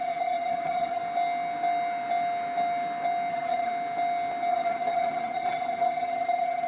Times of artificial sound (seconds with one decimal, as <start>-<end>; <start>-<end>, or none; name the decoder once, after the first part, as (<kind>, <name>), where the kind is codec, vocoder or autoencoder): 0.0-1.0 (vocoder, HiFi-GAN); 3.3-3.7; 4.5-6.7